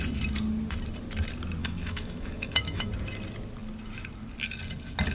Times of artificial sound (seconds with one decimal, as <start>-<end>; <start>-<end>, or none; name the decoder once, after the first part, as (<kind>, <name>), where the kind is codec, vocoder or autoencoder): 1.6-2.9 (autoencoder, DAC-VAE)